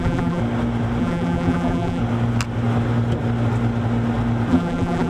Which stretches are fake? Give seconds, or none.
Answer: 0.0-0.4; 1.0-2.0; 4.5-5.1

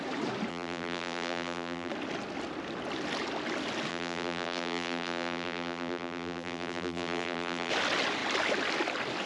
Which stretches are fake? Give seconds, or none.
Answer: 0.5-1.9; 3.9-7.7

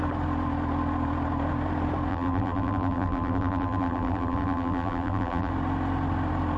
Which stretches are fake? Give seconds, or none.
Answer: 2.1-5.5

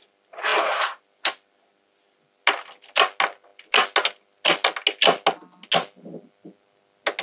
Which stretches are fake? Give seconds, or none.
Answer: none

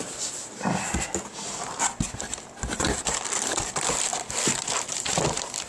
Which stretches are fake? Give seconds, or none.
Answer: 0.0-5.7